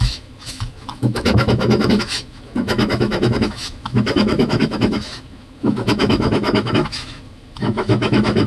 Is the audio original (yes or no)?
no